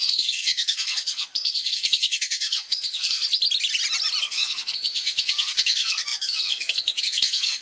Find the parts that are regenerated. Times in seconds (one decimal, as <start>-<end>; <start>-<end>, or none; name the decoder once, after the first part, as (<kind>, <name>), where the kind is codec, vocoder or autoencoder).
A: 0.0-3.2 (codec, SNAC); 4.2-7.6